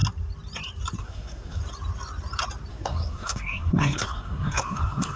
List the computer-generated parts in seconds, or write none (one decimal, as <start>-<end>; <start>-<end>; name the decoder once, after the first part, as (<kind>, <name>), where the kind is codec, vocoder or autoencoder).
1.0-1.6 (codec, SNAC); 2.7-5.2